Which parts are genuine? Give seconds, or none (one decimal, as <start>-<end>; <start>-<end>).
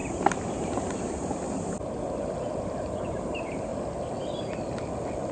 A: 3.7-5.3